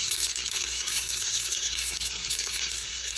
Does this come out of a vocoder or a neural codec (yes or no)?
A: yes